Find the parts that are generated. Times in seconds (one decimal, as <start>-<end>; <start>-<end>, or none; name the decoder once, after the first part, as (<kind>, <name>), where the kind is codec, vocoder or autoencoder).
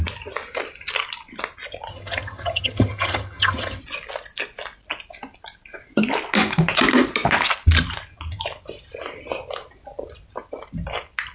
1.9-3.8 (vocoder, HiFi-GAN)